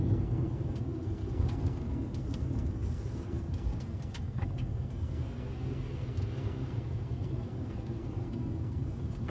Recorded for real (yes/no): no